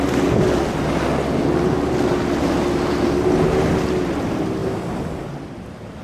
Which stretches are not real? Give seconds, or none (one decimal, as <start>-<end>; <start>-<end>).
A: none